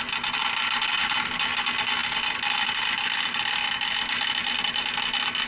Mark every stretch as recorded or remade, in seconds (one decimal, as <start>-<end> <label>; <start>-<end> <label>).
0.0-5.5 recorded